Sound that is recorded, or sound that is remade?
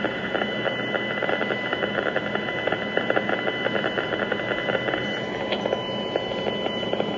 recorded